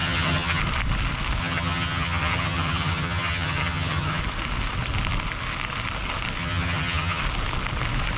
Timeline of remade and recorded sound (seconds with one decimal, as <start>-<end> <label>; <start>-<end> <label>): 0.0-0.6 remade; 0.6-1.4 recorded; 1.4-4.2 remade; 4.2-6.4 recorded; 6.4-7.2 remade; 7.2-8.2 recorded